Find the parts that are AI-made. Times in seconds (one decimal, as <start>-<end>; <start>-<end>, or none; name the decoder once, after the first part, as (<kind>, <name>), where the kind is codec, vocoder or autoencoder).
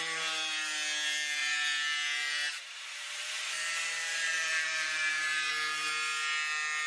1.4-3.4 (vocoder, BigVGAN v2); 4.1-5.5